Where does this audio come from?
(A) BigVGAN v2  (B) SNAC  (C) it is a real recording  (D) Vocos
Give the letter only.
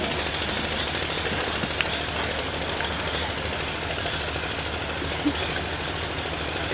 C